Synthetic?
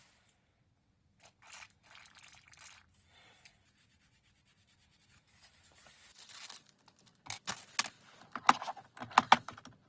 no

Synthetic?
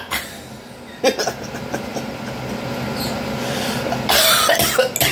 no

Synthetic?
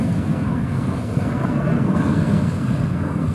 yes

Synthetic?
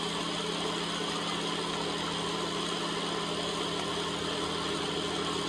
no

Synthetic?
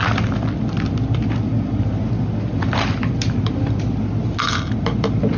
no